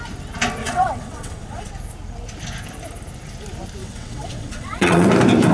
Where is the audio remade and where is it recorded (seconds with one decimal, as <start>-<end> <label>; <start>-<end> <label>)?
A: 0.0-0.6 recorded; 0.6-1.7 remade; 1.7-3.8 recorded; 3.8-5.1 remade; 5.1-5.5 recorded